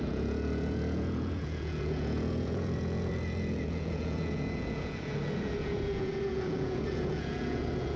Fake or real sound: fake